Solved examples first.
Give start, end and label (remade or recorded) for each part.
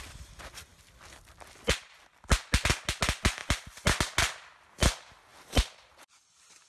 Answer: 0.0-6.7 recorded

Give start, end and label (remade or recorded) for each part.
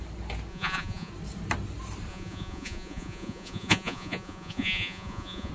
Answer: 0.0-0.5 recorded; 0.5-1.1 remade; 1.1-2.1 recorded; 2.1-5.5 remade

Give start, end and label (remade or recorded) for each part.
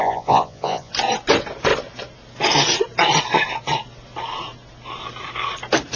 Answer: 0.0-0.9 remade; 0.9-6.0 recorded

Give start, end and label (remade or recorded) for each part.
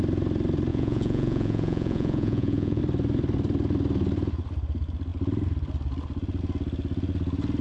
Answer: 0.0-0.7 recorded; 0.7-2.8 remade; 2.8-7.6 recorded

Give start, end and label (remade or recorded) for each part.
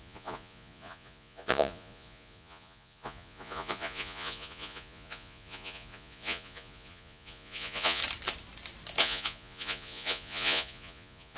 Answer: 0.0-8.0 remade; 8.0-9.0 recorded; 9.0-11.4 remade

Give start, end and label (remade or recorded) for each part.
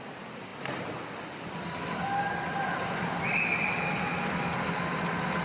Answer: 0.0-5.4 recorded